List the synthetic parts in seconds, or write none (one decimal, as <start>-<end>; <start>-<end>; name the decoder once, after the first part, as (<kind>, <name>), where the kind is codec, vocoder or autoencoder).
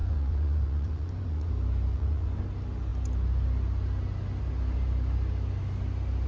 0.0-1.5 (vocoder, Vocos); 1.9-2.4